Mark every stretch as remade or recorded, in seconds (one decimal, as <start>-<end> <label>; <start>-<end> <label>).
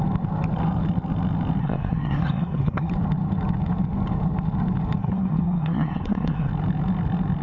0.0-1.6 recorded; 1.6-2.9 remade; 2.9-5.0 recorded; 5.0-6.5 remade; 6.5-7.4 recorded